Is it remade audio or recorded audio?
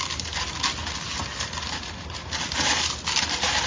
recorded